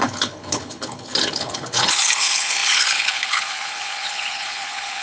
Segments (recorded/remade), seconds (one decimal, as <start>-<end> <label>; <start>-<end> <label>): 0.0-5.0 remade